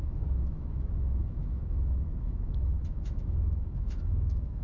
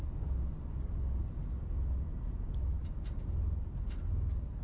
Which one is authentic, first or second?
second